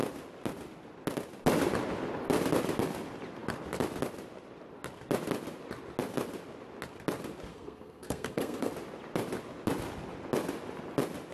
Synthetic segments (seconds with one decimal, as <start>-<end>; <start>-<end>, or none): 7.5-8.7